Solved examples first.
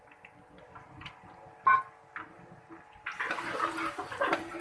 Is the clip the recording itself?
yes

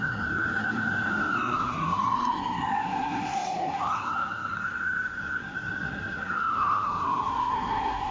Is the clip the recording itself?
no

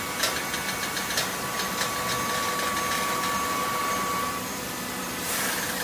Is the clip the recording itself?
yes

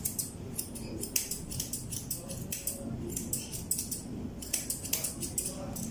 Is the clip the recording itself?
yes